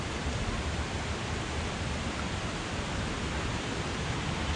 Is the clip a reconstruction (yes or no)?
no